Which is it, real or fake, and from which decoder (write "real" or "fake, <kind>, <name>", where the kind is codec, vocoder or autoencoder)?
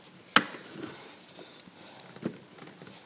real